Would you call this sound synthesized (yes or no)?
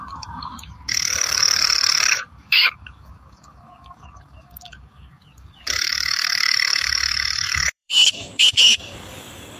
yes